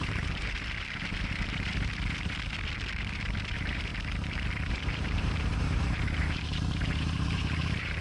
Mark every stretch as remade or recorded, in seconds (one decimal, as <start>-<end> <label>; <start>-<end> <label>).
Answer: 0.0-1.7 remade; 1.7-3.5 recorded; 3.5-3.9 remade; 3.9-4.7 recorded; 4.7-8.0 remade